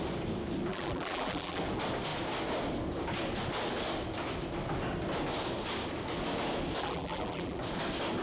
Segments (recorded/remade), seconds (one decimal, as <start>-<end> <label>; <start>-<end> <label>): 0.0-0.7 recorded; 0.7-1.6 remade; 1.6-6.8 recorded; 6.8-7.6 remade; 7.6-8.2 recorded